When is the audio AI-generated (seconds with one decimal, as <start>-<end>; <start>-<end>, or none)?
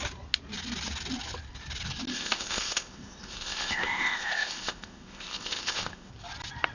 2.1-6.1